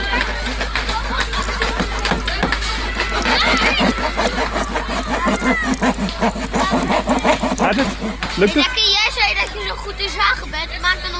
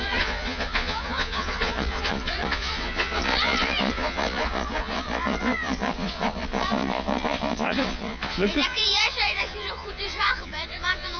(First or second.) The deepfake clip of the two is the second